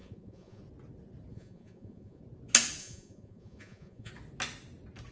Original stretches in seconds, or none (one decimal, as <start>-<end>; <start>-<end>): 0.6-1.3; 2.2-2.8; 4.1-5.1